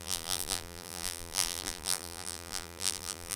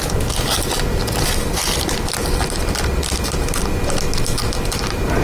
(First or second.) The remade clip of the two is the first